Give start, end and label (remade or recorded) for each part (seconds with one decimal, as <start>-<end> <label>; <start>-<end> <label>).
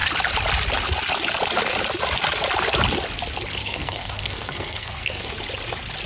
0.0-3.6 recorded; 3.6-5.3 remade; 5.3-6.1 recorded